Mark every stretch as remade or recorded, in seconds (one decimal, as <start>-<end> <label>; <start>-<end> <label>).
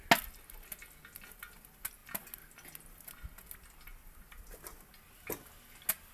0.0-6.1 recorded